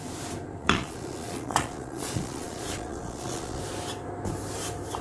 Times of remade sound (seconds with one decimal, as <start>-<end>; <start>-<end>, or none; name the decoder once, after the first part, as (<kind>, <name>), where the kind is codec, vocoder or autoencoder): 0.6-3.6 (vocoder, Vocos)